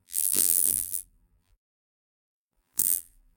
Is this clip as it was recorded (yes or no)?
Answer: no